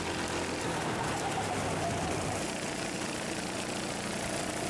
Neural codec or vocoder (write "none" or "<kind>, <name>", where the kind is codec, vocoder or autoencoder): none